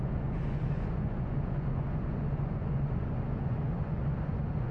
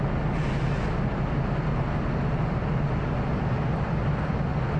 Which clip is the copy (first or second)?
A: first